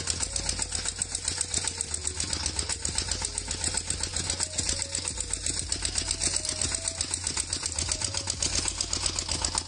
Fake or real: real